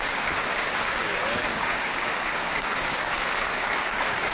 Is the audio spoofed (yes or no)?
yes